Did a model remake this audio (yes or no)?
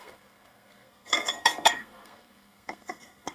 yes